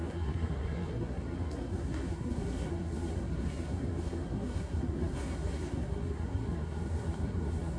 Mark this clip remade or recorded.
remade